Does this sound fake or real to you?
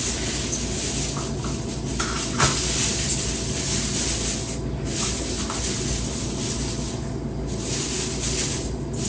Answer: real